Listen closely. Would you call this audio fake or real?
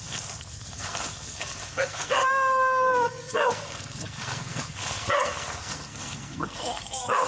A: fake